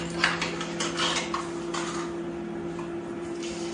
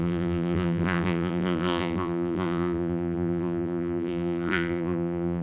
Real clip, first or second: first